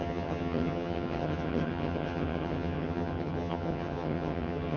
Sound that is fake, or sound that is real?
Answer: fake